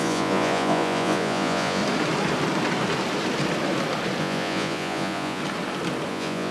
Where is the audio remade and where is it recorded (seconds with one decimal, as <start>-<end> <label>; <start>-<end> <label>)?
0.0-1.8 remade; 1.8-4.2 recorded; 4.2-5.4 remade; 5.4-6.1 recorded; 6.1-6.5 remade